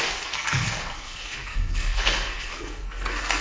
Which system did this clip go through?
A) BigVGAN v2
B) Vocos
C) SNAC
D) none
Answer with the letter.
C